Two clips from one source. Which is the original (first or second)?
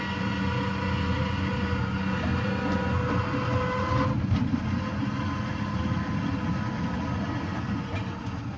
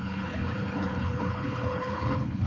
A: first